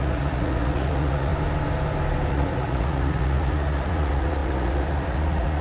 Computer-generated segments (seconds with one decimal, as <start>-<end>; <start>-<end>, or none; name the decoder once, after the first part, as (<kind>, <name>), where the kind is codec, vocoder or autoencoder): 0.0-1.3 (vocoder, Vocos); 2.3-5.6